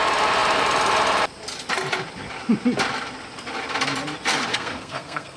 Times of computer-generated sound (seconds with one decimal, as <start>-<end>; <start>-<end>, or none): 4.5-5.4